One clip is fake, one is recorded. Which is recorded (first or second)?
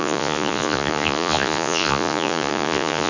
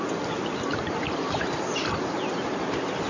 second